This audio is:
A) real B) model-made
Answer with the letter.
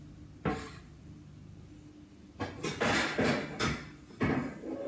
A